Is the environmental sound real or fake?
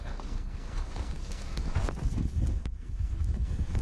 fake